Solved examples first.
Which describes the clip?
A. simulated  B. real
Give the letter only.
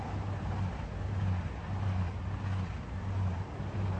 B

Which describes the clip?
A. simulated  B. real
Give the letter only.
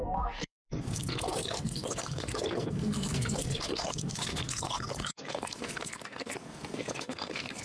A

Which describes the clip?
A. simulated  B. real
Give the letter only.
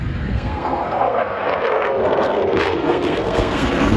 A